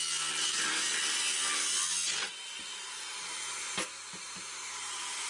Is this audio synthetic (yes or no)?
no